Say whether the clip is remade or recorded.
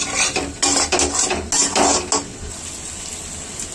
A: recorded